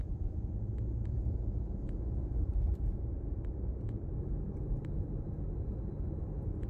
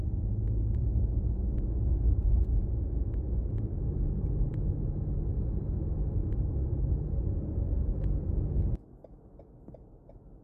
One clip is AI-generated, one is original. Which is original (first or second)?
second